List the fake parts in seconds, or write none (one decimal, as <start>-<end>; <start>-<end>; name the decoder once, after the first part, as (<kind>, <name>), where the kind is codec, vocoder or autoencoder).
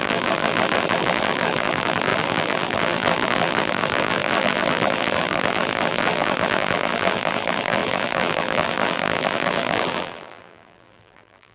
0.0-11.5 (vocoder, BigVGAN v2)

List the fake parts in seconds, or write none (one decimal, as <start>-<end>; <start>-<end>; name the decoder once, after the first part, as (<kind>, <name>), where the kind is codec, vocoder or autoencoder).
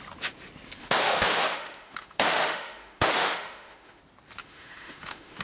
0.8-4.0 (autoencoder, DAC-VAE); 4.4-5.4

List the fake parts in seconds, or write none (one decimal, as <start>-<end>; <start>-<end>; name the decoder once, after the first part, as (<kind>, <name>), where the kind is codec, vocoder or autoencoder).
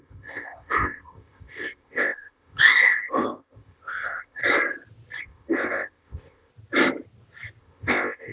0.0-4.4 (codec, ZipCodec); 5.2-6.5; 7.6-8.3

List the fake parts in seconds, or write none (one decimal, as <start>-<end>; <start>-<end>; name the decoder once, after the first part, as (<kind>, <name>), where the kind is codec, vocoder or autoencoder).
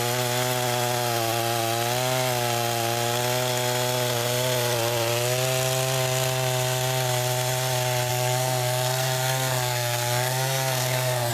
8.1-11.3 (codec, SNAC)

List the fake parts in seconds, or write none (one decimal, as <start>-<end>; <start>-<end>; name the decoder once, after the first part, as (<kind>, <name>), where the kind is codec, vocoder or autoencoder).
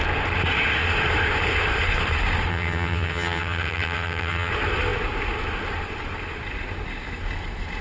2.5-4.5 (vocoder, HiFi-GAN)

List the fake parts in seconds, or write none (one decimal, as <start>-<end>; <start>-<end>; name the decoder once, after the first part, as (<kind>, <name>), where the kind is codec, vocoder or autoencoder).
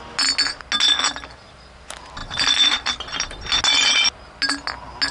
2.2-3.4 (vocoder, BigVGAN v2)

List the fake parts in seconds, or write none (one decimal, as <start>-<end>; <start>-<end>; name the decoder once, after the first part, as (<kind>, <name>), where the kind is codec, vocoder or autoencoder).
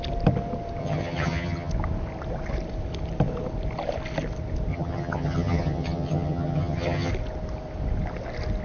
0.8-1.7 (vocoder, HiFi-GAN); 4.7-7.1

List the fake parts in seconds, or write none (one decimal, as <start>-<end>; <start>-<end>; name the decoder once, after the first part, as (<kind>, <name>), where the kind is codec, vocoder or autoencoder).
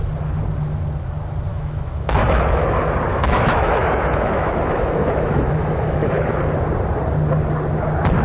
1.5-2.7 (autoencoder, DAC-VAE); 3.1-6.4